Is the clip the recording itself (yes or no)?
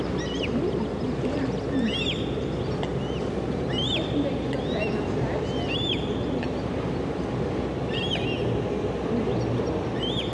yes